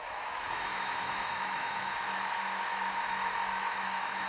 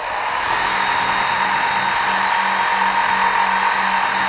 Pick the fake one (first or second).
first